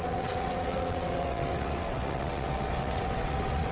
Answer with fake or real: fake